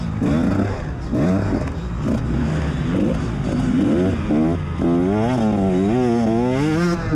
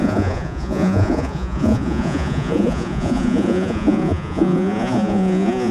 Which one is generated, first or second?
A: second